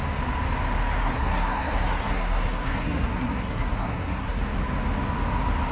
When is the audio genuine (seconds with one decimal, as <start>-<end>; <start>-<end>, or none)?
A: 0.0-1.0; 4.4-5.7